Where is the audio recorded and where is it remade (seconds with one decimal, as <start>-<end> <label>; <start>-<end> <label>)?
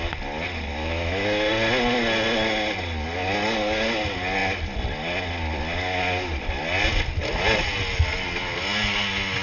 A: 0.0-0.7 recorded; 0.7-1.5 remade; 1.5-9.4 recorded